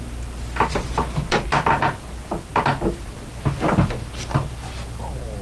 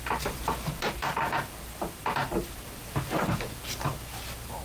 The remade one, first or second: second